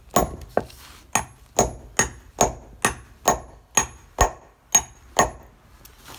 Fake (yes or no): no